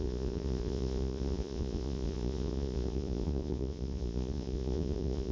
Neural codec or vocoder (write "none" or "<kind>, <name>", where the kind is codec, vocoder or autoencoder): vocoder, Vocos